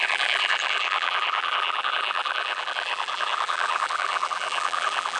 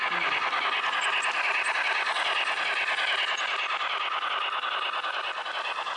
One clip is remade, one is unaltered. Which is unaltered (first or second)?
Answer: second